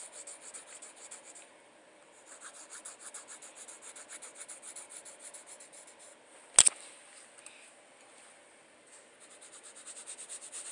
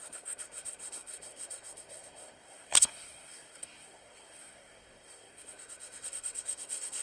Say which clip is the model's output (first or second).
second